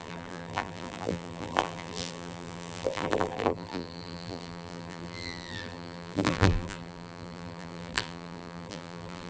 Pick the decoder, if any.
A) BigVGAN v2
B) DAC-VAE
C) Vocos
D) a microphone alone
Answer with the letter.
A